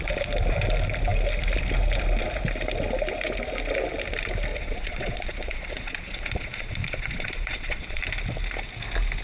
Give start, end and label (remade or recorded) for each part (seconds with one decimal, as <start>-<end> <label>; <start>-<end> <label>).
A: 0.0-4.5 recorded; 4.5-8.0 remade; 8.0-9.2 recorded